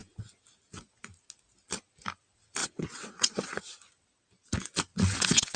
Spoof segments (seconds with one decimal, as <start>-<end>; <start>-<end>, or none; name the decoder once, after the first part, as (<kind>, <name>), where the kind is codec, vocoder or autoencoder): 2.6-3.6 (vocoder, WaveNeXt); 4.9-5.6